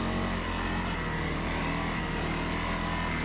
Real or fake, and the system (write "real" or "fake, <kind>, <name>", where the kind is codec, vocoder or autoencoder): real